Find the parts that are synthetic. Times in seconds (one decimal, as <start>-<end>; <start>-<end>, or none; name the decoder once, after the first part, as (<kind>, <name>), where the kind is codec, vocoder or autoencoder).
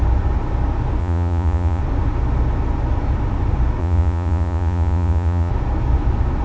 1.0-1.8 (vocoder, Vocos); 3.8-5.5